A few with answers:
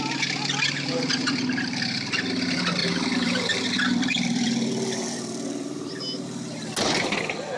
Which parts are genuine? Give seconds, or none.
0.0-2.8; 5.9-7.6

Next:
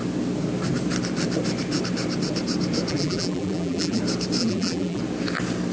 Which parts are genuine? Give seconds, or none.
0.0-2.9; 4.0-4.4; 5.0-5.7

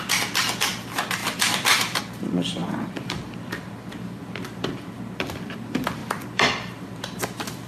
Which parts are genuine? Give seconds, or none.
0.0-1.2; 2.0-2.6; 4.2-6.0; 7.2-7.7